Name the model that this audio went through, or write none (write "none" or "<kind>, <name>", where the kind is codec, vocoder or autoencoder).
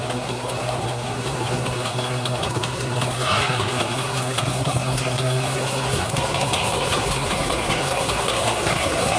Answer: codec, SNAC